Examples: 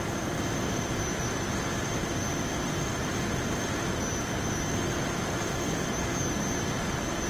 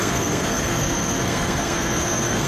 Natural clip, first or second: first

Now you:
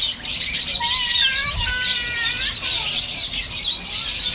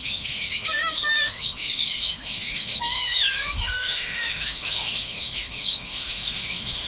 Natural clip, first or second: first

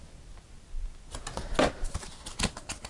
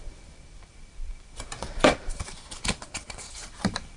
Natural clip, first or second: first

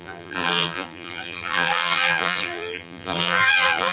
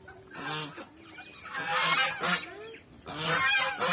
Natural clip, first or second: second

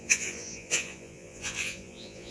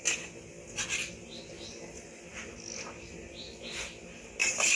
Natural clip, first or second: second